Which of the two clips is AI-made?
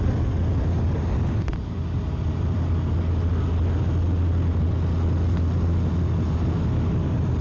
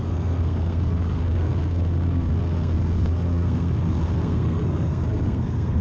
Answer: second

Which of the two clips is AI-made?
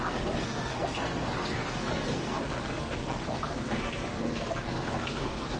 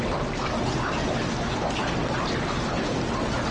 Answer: first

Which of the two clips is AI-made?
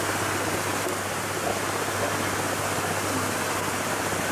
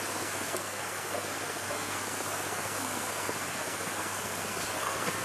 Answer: second